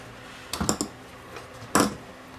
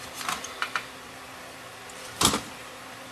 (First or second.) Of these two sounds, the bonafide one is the first